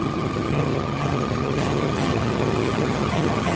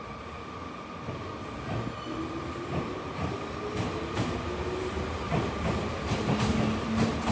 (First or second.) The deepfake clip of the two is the first